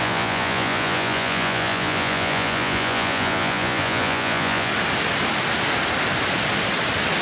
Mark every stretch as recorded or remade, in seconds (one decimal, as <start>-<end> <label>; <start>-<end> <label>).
0.0-4.7 remade; 4.7-7.2 recorded